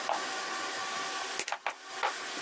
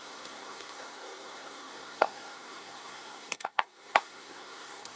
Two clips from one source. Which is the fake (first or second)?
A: second